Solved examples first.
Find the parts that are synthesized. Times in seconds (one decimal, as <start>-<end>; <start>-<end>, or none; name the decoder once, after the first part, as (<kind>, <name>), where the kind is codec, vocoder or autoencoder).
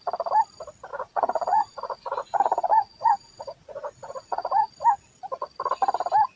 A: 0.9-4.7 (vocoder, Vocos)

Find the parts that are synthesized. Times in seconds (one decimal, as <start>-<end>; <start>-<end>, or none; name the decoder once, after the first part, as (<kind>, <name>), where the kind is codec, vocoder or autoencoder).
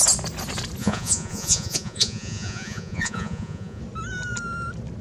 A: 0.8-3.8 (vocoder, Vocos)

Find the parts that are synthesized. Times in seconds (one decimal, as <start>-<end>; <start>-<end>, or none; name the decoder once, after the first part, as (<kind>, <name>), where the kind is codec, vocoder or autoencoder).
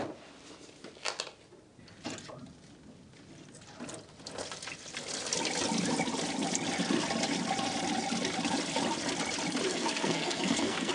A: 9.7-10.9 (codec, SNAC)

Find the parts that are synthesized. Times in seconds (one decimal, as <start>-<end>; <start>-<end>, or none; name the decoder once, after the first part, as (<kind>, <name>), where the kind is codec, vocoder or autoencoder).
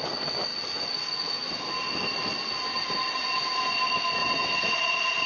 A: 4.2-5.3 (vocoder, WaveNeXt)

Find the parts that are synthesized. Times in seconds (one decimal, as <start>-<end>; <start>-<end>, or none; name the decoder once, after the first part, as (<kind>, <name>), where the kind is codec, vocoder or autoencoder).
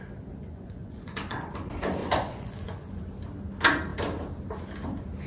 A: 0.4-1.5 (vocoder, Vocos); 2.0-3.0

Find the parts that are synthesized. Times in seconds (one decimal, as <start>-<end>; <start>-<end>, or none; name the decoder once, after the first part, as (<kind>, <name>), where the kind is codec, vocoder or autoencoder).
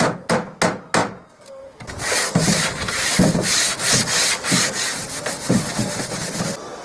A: none